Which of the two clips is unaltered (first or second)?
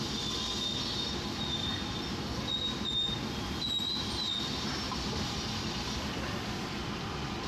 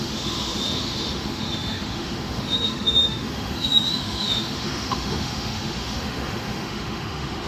first